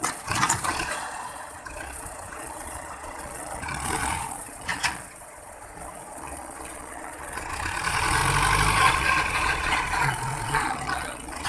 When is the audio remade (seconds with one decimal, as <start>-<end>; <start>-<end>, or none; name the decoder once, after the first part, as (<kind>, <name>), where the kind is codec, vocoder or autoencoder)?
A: 0.0-8.2 (vocoder, Vocos); 8.8-11.5